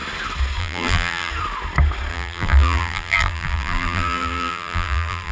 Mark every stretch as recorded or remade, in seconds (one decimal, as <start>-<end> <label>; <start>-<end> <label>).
0.0-0.6 recorded; 0.6-1.3 remade; 1.3-2.1 recorded; 2.1-5.3 remade